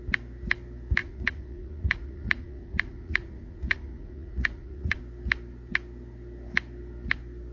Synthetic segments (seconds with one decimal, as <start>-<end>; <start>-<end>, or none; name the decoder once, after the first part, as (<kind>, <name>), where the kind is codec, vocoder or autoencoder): 1.0-5.0 (vocoder, Vocos)